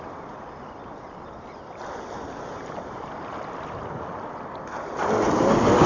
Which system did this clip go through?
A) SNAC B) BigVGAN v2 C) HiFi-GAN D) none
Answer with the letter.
D